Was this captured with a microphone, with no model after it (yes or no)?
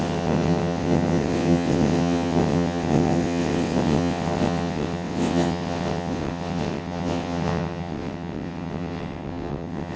no